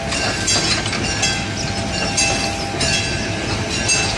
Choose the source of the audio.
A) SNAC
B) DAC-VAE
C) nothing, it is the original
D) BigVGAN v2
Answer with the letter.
C